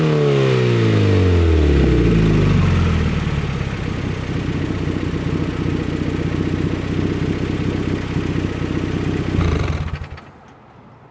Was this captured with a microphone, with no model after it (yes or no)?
yes